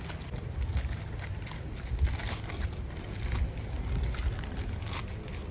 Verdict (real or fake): real